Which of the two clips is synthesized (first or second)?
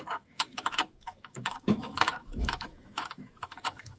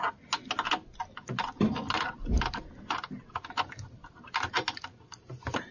first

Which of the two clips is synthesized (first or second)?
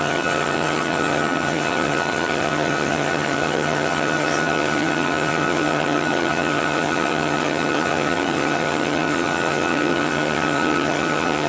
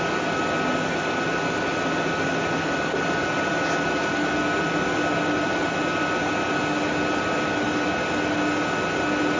first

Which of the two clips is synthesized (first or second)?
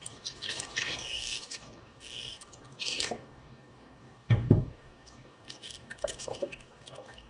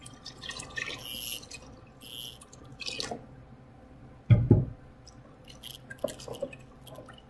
first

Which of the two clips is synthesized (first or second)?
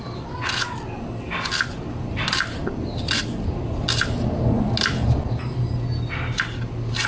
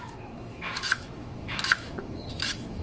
second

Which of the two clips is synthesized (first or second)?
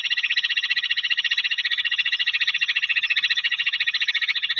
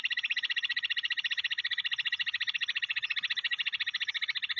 first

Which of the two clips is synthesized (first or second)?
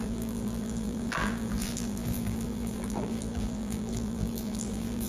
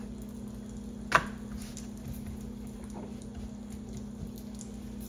first